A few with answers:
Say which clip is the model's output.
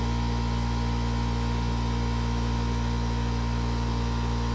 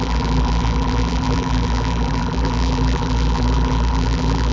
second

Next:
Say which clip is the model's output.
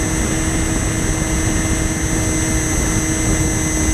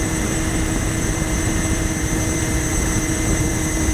second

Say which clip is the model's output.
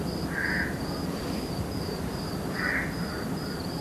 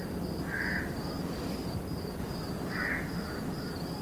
first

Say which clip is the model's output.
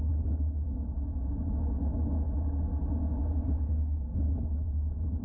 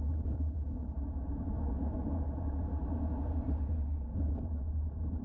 second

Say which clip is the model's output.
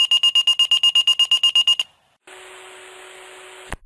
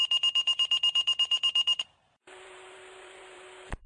second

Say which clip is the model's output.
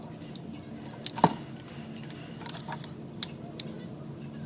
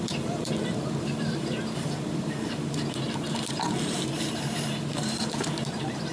second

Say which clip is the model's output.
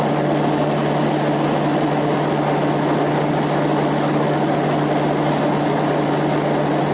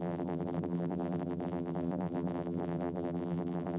second